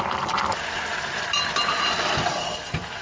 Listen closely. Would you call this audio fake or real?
real